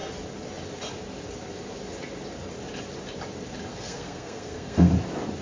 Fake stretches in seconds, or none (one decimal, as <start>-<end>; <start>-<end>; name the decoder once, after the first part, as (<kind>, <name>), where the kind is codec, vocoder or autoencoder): 3.7-4.9 (codec, SNAC)